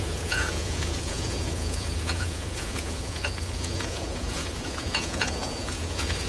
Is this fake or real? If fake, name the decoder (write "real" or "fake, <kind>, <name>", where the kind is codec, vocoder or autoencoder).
fake, vocoder, Vocos